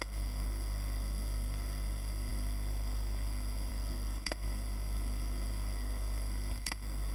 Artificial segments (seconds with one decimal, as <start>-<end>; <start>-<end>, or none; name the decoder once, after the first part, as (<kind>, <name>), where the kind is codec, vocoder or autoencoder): 0.0-7.1 (codec, SNAC)

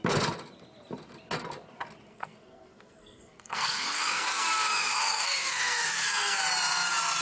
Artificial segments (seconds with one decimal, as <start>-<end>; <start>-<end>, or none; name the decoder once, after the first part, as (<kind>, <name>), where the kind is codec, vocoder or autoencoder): 2.1-6.4 (codec, SNAC)

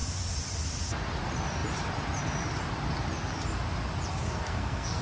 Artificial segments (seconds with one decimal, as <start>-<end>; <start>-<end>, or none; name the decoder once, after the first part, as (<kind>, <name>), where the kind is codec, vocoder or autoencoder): 4.1-5.0 (codec, SNAC)

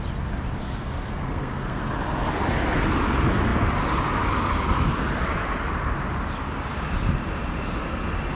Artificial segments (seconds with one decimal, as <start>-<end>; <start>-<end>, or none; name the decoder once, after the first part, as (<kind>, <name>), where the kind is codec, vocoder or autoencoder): 0.6-1.8 (codec, SNAC)